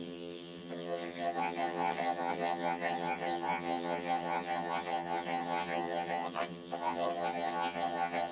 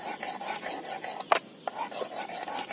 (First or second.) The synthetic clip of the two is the first